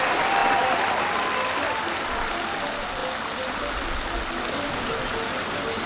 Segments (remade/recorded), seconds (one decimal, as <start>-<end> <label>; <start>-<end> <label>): 0.0-5.9 recorded